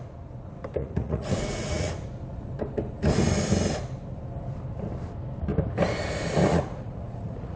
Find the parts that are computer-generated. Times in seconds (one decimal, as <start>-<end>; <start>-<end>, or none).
0.8-1.9; 6.5-7.6